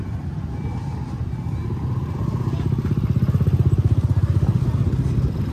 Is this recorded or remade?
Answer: recorded